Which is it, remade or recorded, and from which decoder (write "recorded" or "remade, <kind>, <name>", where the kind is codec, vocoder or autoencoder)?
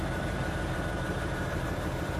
remade, vocoder, BigVGAN v2